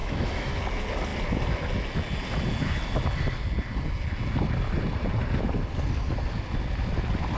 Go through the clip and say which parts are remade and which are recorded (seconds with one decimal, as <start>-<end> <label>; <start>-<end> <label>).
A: 0.0-0.6 remade; 0.6-7.4 recorded